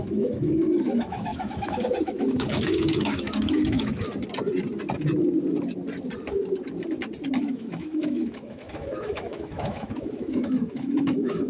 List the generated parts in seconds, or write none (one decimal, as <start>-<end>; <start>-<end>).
0.0-4.1; 7.4-11.5